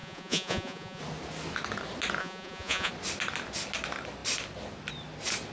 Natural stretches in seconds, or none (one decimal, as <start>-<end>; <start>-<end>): 1.0-2.2; 2.9-5.5